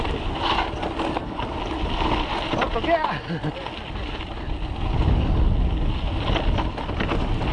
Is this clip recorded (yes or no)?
yes